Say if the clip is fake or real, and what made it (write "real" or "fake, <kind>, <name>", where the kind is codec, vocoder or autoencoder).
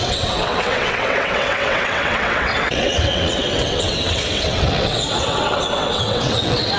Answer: fake, vocoder, WaveNeXt